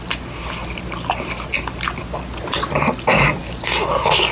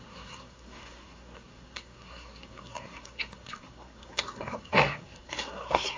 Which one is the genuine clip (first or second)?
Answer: first